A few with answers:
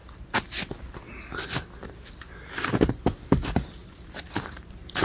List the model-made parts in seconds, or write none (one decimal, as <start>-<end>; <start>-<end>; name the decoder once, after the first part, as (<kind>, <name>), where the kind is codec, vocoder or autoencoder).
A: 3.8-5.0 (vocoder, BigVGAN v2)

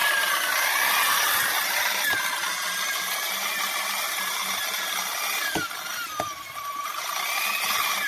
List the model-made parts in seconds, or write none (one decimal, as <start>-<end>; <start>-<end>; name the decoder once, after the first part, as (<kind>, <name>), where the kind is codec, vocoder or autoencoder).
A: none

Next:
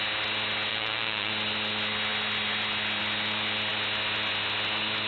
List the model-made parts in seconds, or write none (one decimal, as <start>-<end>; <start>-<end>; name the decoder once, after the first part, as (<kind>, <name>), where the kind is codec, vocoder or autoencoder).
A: 0.7-1.3 (vocoder, Vocos)

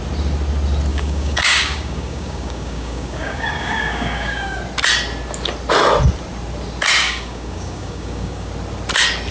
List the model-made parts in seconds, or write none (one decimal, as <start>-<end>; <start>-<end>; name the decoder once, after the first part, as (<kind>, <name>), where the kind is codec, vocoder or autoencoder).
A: 0.9-4.6 (codec, DAC); 7.0-8.5

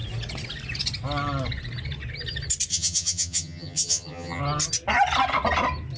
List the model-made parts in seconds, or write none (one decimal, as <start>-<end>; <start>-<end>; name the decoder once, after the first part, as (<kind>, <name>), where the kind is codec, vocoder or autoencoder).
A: 2.7-4.4 (vocoder, HiFi-GAN)